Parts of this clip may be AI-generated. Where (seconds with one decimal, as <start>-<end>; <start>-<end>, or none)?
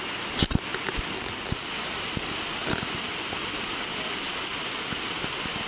none